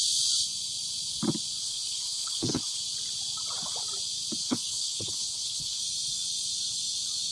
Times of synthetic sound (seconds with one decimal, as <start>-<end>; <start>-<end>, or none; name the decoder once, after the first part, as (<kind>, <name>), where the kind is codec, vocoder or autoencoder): 1.6-2.8 (codec, HILCodec); 4.4-5.8

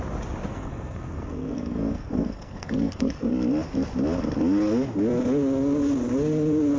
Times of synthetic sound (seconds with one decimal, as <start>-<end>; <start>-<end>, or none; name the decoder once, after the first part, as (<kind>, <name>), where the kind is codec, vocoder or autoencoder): 0.5-3.3 (codec, SNAC)

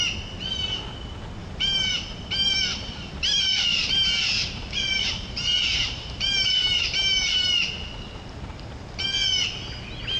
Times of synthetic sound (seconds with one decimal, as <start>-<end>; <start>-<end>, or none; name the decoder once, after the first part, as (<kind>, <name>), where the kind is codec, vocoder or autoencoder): 1.4-1.9 (vocoder, BigVGAN v2); 2.7-7.4

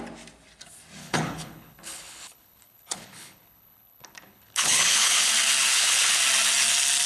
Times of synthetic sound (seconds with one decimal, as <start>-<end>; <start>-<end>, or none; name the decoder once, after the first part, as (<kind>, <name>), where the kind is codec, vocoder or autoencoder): 1.0-5.3 (codec, HILCodec); 5.7-6.2

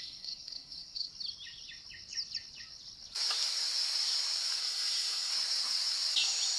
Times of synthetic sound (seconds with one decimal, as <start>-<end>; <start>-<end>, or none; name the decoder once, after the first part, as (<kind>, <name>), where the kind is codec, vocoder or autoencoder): 0.0-1.1 (codec, SNAC); 4.6-5.3

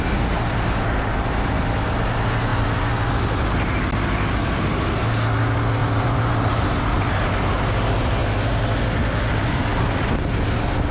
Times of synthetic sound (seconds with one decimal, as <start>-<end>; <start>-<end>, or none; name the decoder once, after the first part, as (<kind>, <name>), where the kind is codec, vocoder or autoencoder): 5.8-7.0 (vocoder, BigVGAN v2)

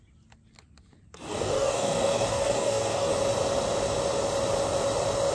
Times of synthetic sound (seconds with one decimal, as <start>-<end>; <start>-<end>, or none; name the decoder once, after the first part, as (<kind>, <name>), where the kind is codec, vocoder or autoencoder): 1.3-3.1 (codec, DAC)